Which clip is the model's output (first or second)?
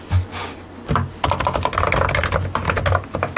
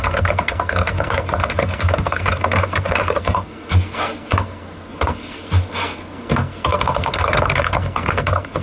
second